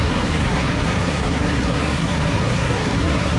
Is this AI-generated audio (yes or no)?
yes